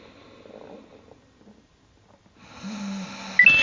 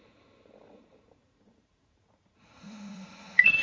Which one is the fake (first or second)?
second